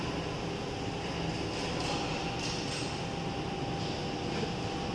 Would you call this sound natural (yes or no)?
yes